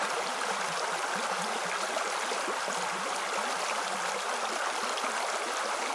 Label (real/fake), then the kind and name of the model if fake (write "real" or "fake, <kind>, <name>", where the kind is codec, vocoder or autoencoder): real